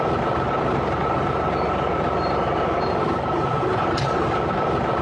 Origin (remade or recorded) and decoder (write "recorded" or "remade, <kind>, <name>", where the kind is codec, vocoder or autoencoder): recorded